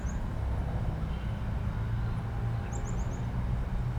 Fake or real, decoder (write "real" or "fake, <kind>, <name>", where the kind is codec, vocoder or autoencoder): real